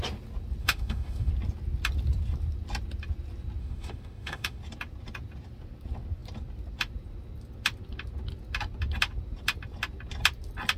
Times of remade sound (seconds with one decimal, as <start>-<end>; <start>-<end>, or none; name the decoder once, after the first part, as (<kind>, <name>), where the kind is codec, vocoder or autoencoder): 0.6-1.3 (autoencoder, DAC-VAE); 3.6-4.6